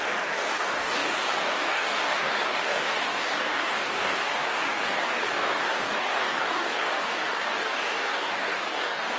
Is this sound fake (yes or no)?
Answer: yes